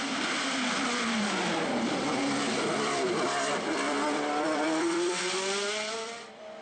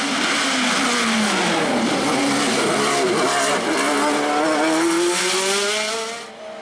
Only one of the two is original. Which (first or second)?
second